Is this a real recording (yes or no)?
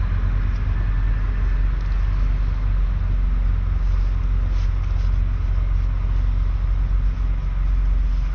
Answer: yes